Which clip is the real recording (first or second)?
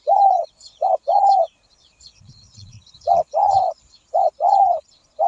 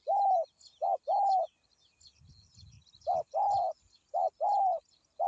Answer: second